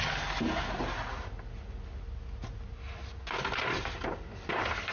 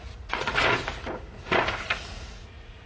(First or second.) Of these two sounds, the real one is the first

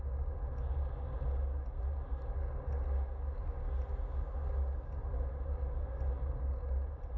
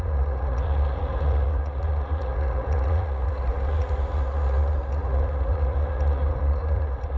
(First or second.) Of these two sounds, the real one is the first